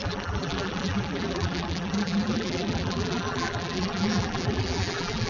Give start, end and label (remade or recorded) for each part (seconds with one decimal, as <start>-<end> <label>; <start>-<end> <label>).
0.0-5.3 remade